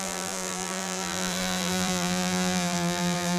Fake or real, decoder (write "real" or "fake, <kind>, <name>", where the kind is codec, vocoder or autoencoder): fake, vocoder, BigVGAN v2